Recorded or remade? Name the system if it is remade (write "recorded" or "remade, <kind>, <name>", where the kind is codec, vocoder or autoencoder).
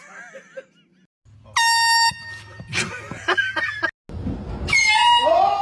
recorded